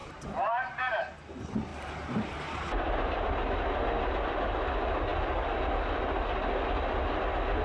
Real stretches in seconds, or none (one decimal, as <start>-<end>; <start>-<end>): 1.0-1.7; 3.6-7.6